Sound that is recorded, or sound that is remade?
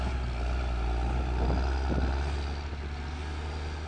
recorded